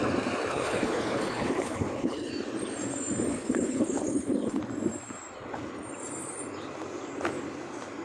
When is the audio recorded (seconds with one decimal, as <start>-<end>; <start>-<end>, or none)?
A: 0.0-0.5; 2.3-3.3; 4.6-8.0